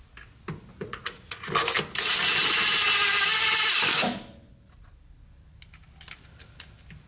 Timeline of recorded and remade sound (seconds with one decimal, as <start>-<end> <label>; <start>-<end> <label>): 0.0-0.7 recorded; 0.7-1.5 remade; 1.5-7.1 recorded